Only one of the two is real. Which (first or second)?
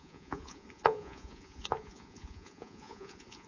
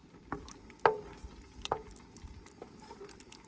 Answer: second